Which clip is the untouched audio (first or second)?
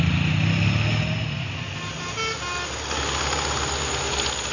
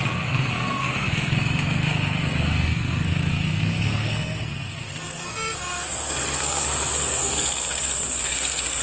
first